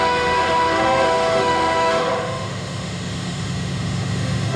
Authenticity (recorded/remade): remade